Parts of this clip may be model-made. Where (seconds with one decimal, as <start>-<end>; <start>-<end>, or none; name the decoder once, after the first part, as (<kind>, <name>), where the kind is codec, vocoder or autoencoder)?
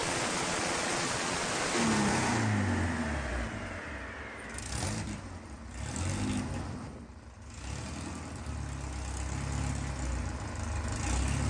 0.0-1.5 (vocoder, Vocos)